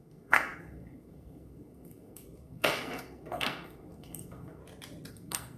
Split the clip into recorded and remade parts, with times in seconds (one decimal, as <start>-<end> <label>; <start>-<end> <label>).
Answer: 0.0-4.6 remade; 4.6-5.1 recorded; 5.1-5.6 remade